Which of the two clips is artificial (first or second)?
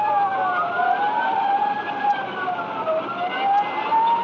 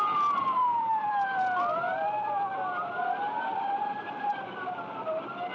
second